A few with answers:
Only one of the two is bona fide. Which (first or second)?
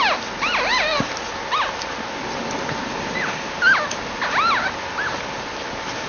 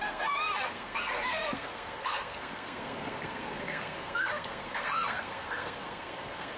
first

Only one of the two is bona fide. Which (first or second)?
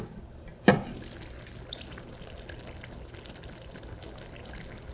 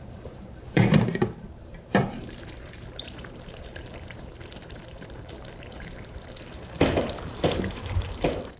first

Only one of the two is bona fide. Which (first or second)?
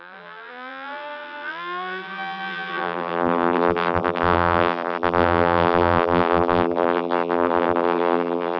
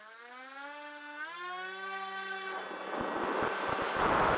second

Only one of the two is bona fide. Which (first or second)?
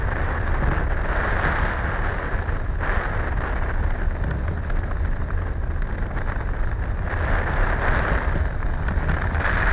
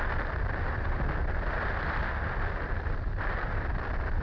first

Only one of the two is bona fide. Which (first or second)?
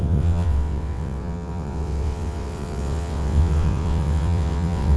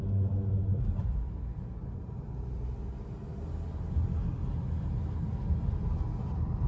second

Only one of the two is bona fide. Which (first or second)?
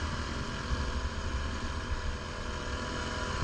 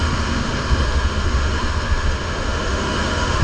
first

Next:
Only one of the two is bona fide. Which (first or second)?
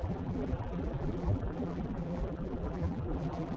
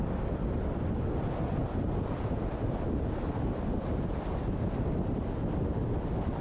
second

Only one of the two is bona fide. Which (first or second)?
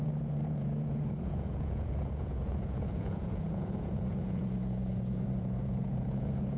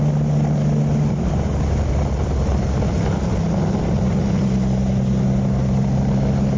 second